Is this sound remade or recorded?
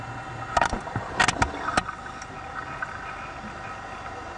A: recorded